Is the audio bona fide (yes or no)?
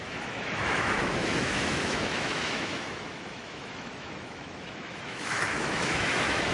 no